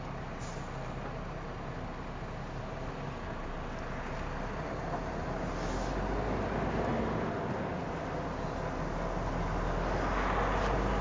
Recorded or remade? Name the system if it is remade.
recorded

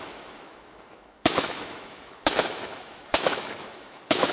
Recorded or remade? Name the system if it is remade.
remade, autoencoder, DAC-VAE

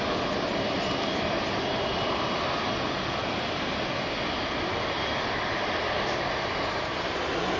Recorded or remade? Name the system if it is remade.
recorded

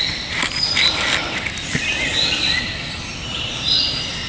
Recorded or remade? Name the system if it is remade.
remade, vocoder, BigVGAN v2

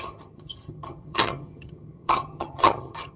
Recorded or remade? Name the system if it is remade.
remade, vocoder, HiFi-GAN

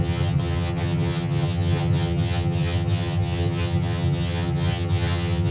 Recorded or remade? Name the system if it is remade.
remade, vocoder, HiFi-GAN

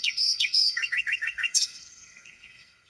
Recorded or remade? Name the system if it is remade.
remade, codec, SNAC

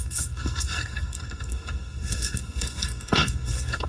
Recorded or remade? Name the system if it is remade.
remade, codec, SNAC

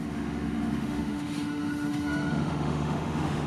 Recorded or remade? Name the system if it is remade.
remade, autoencoder, DAC-VAE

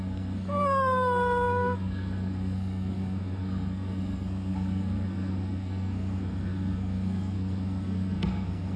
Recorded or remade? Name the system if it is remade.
remade, codec, SNAC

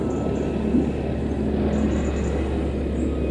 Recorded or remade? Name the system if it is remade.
recorded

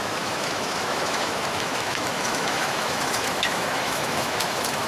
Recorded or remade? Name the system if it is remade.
remade, autoencoder, DAC-VAE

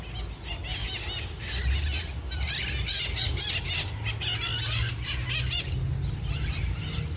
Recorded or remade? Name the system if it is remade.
recorded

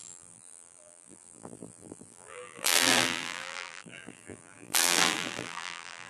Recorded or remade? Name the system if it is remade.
remade, vocoder, BigVGAN v2